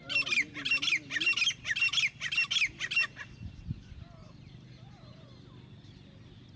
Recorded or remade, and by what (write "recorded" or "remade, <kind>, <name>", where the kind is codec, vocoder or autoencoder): recorded